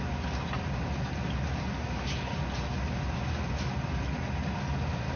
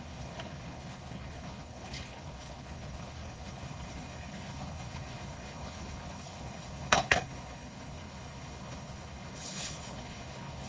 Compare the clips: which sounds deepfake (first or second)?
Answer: second